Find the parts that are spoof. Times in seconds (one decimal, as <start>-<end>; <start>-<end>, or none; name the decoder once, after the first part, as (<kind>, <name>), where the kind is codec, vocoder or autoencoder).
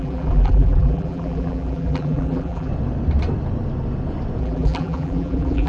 0.0-2.7 (vocoder, BigVGAN v2); 4.4-5.7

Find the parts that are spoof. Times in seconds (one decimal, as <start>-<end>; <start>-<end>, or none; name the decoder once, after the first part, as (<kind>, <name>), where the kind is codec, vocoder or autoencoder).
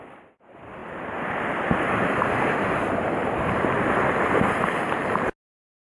none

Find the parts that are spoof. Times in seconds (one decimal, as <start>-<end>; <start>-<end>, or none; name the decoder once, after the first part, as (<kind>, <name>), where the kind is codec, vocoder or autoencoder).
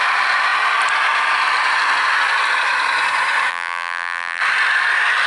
3.5-4.4 (vocoder, BigVGAN v2)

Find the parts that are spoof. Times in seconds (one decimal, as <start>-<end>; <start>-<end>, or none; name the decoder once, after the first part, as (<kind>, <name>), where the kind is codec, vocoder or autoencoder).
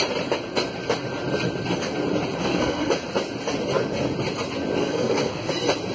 2.4-2.9 (codec, SNAC); 4.8-5.5